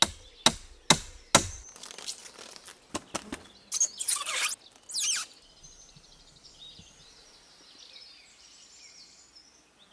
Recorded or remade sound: recorded